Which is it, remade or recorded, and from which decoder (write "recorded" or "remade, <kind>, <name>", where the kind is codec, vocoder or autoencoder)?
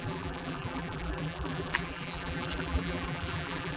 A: remade, vocoder, BigVGAN v2